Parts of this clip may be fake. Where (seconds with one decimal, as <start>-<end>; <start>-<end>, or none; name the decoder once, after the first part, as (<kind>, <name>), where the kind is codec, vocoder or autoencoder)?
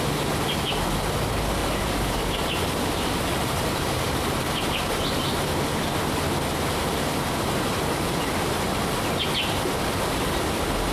1.6-4.9 (vocoder, BigVGAN v2)